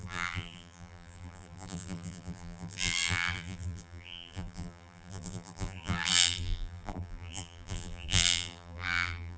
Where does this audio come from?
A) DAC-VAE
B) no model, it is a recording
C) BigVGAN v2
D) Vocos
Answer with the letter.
C